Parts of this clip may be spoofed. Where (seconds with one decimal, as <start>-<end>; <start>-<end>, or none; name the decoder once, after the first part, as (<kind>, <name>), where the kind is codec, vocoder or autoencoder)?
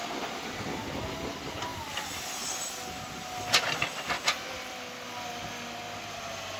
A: none